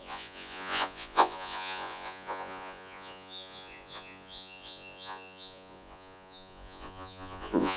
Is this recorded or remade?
remade